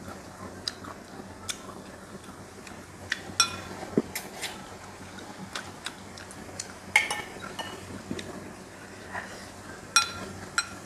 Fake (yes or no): no